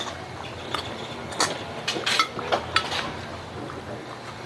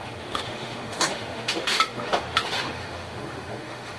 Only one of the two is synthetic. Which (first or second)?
second